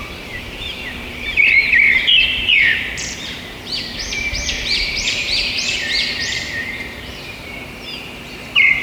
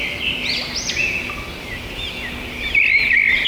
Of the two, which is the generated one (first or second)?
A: first